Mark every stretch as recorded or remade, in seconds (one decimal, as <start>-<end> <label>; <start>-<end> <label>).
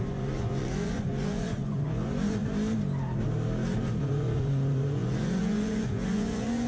0.0-2.4 remade; 2.4-4.0 recorded; 4.0-6.7 remade